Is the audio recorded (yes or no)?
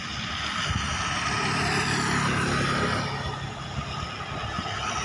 yes